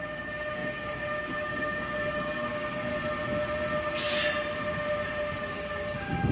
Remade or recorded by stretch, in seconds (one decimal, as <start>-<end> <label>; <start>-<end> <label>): 0.0-2.9 remade; 2.9-5.5 recorded; 5.5-6.3 remade